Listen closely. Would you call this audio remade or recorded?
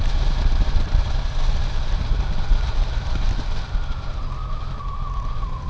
recorded